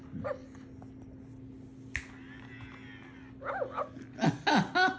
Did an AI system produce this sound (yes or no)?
no